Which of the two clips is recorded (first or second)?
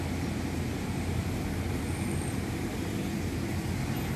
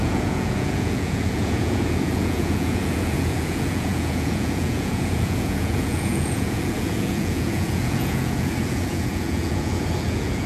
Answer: first